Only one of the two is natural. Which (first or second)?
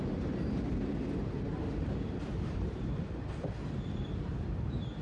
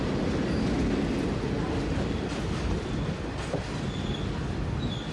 second